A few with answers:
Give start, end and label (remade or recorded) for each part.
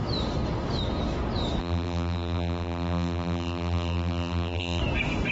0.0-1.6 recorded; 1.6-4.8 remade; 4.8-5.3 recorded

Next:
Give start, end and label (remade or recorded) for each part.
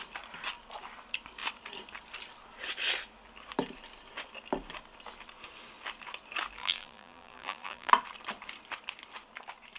0.0-6.6 recorded; 6.6-7.9 remade; 7.9-9.8 recorded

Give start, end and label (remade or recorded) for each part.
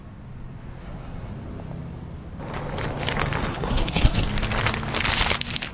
0.0-0.8 recorded; 0.8-1.3 remade; 1.3-3.5 recorded; 3.5-4.2 remade; 4.2-5.7 recorded